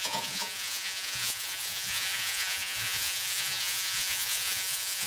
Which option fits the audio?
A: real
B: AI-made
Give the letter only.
B